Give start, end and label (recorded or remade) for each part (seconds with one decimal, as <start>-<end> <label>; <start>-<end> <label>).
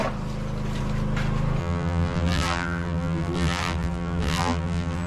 0.0-1.6 recorded; 1.6-5.1 remade